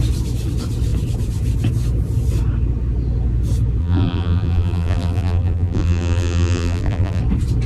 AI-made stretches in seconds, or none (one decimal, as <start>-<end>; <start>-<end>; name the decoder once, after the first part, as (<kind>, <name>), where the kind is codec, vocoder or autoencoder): 3.8-7.2 (vocoder, BigVGAN v2)